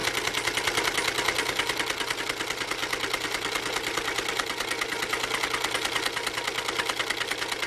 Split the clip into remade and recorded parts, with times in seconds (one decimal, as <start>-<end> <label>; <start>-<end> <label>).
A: 0.0-7.7 recorded